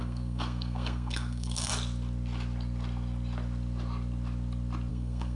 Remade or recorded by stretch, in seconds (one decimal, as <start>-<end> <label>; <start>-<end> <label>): 0.0-1.7 remade; 1.7-4.9 recorded; 4.9-5.4 remade